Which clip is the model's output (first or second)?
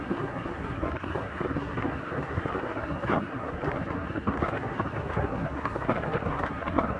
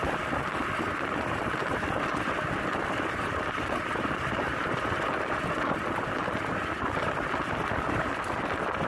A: first